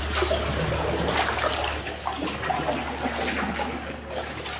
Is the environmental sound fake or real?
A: real